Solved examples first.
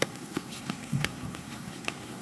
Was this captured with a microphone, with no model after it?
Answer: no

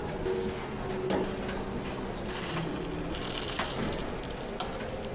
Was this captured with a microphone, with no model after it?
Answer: yes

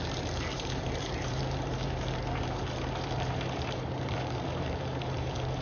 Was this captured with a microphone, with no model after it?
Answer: no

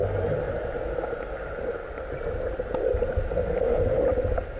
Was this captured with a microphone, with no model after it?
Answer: yes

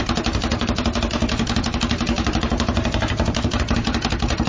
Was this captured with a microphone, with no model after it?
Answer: no